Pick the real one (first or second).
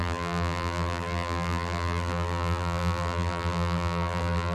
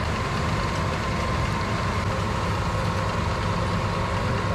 second